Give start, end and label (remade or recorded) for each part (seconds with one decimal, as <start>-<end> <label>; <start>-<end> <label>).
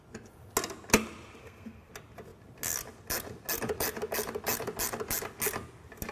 0.0-1.4 recorded; 1.4-1.9 remade; 1.9-6.1 recorded